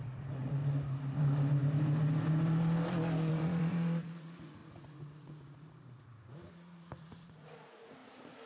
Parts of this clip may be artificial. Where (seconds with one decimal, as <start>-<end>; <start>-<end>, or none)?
0.0-0.6; 3.3-8.5